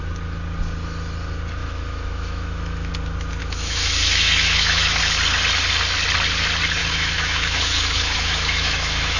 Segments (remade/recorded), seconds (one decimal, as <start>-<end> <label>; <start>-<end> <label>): 0.0-1.6 recorded; 1.6-2.9 remade; 2.9-3.4 recorded; 3.4-5.0 remade; 5.0-6.8 recorded; 6.8-9.2 remade